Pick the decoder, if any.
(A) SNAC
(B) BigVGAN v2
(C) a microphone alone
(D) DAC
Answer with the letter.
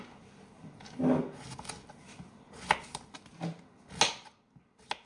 C